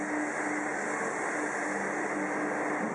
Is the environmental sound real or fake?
real